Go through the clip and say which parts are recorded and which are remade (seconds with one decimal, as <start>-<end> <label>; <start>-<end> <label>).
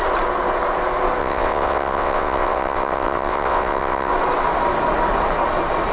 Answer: 0.0-1.2 recorded; 1.2-4.1 remade; 4.1-5.9 recorded